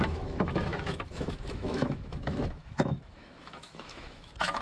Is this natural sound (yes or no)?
no